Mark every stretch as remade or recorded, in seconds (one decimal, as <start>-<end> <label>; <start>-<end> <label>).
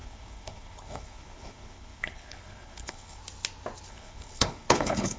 0.0-3.2 remade; 3.2-3.9 recorded; 3.9-5.2 remade